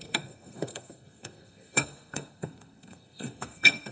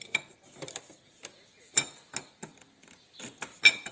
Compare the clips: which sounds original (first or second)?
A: second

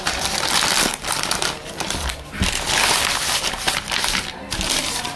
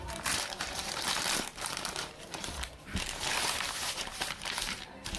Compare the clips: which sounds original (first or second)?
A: first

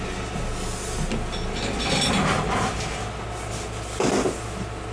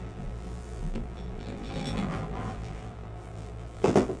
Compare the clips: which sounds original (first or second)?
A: first